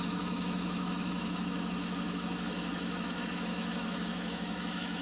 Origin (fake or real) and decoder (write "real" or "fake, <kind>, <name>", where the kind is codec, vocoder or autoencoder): fake, autoencoder, DAC-VAE